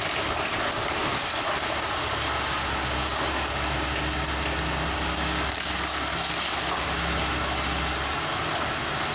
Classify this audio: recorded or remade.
recorded